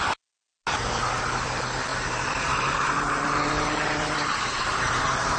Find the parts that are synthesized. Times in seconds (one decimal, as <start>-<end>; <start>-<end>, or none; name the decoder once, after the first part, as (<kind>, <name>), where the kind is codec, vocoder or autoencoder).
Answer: 1.9-5.4 (vocoder, BigVGAN v2)